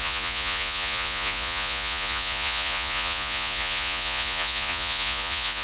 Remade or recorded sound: remade